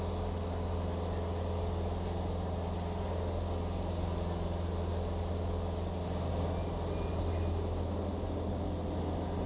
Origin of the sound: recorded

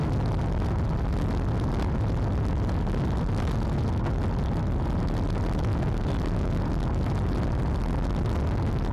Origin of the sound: recorded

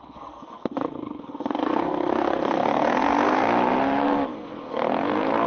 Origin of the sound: remade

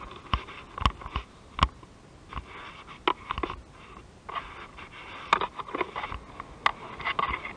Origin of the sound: recorded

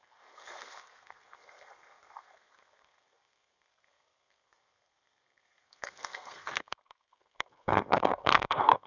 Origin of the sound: remade